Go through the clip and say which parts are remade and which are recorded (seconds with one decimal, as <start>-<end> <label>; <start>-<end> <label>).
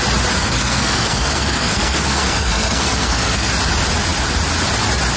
0.0-0.4 recorded; 0.4-3.5 remade; 3.5-5.2 recorded